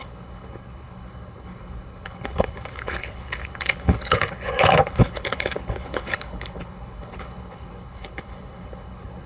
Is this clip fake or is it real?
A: fake